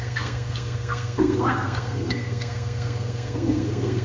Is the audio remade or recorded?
remade